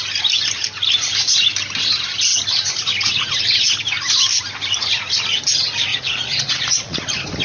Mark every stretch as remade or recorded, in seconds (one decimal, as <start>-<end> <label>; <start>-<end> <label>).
0.0-5.9 recorded; 5.9-7.0 remade; 7.0-7.4 recorded